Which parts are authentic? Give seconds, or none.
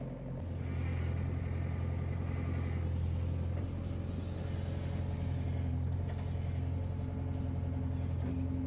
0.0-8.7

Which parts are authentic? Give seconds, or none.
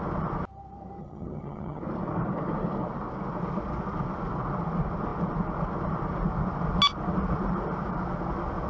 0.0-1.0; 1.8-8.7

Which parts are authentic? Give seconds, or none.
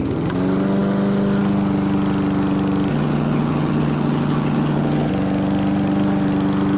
0.0-2.9; 5.1-6.8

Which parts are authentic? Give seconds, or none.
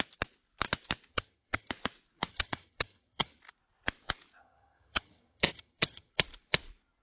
0.0-1.1; 1.7-2.3; 3.4-4.4; 6.1-7.0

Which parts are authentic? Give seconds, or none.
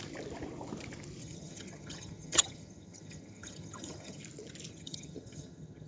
0.0-1.2; 4.2-4.7